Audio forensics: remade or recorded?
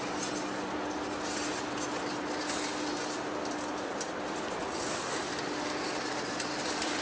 recorded